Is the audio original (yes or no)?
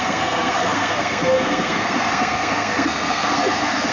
no